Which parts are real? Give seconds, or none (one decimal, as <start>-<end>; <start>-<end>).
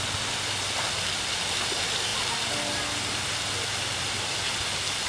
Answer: 0.0-3.9; 4.5-5.1